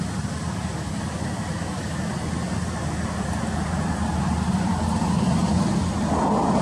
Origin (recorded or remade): remade